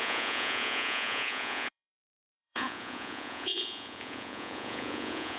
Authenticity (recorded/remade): remade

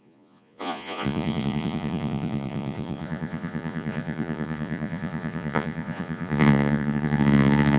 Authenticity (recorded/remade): remade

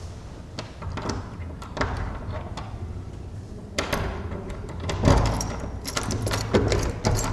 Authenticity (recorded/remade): recorded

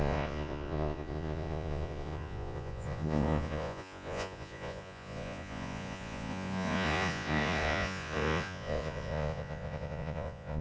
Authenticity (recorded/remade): remade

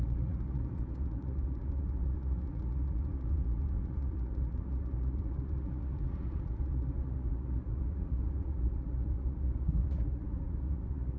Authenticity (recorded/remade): remade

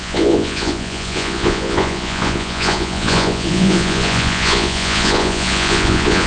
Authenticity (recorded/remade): remade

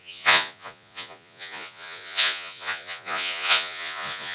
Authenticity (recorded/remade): remade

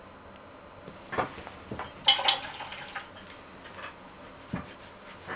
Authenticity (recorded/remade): recorded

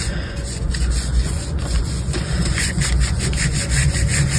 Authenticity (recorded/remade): remade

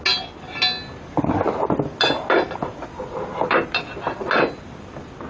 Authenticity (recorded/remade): recorded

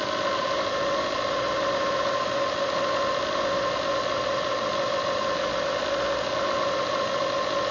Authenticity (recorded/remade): recorded